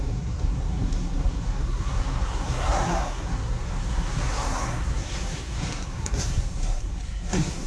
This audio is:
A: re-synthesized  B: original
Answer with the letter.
A